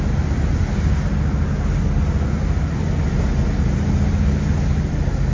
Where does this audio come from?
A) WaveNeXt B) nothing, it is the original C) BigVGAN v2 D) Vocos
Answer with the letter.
B